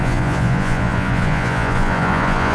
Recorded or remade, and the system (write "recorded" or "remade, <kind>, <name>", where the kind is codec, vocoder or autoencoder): remade, vocoder, Vocos